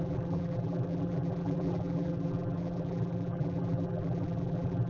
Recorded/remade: remade